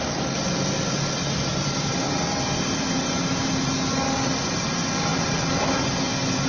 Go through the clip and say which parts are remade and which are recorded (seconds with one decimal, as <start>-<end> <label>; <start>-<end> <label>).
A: 0.0-1.5 recorded; 1.5-3.5 remade; 3.5-5.1 recorded; 5.1-5.8 remade; 5.8-6.5 recorded